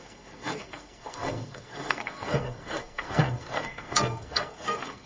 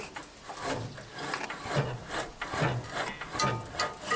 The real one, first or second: second